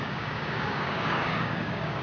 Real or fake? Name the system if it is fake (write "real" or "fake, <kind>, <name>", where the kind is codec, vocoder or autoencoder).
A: fake, codec, DAC